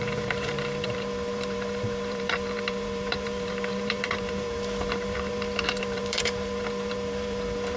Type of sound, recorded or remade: remade